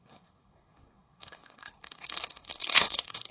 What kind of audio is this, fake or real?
fake